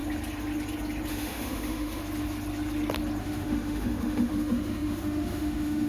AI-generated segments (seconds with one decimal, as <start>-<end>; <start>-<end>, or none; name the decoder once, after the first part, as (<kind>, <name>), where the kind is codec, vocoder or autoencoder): 1.1-2.0 (autoencoder, DAC-VAE); 3.2-5.9